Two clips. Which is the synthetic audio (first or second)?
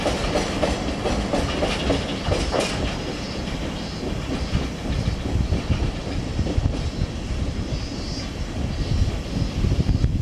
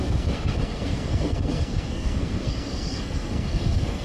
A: second